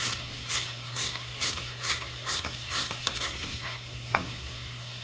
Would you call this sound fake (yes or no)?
yes